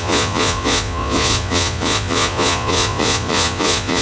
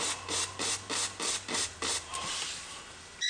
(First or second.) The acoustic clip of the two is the second